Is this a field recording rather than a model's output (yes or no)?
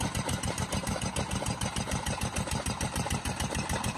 no